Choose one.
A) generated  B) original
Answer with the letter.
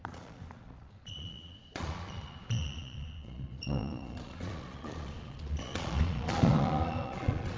A